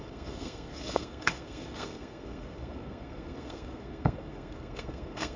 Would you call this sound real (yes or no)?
no